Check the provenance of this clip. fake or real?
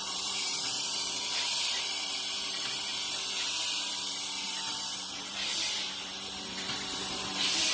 fake